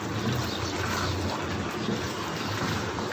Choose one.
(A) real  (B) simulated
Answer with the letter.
A